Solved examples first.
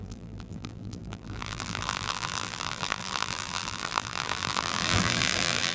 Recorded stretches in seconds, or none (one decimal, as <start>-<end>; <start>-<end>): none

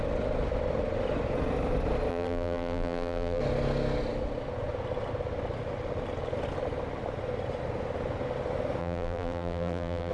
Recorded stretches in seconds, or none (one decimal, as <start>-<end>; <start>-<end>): 0.0-2.1; 3.4-8.8

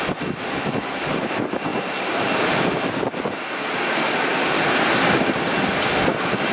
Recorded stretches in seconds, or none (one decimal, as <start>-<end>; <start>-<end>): 0.0-1.7; 2.7-6.5